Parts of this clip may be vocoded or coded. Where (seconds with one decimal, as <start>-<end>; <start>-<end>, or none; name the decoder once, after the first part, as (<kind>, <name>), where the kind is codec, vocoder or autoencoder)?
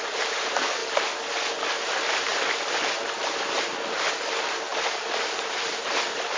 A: none